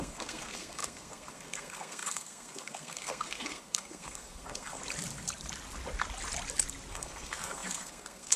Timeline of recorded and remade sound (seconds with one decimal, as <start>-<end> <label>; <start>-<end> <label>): 0.0-4.8 remade; 4.8-6.9 recorded; 6.9-8.4 remade